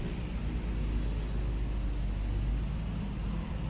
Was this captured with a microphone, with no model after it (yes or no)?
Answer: yes